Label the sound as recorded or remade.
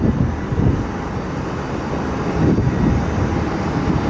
recorded